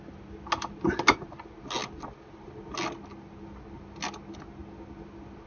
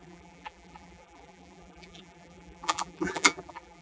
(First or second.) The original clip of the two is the first